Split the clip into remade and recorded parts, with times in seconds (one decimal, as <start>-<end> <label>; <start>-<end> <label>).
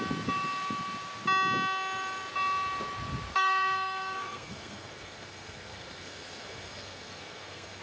0.0-3.3 recorded; 3.3-7.8 remade